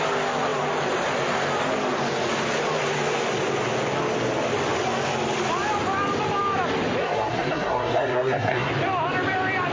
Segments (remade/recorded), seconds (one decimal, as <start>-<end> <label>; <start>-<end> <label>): 0.0-7.0 recorded; 7.0-8.7 remade; 8.7-9.7 recorded